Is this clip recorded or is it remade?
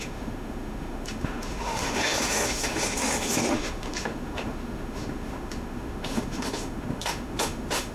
remade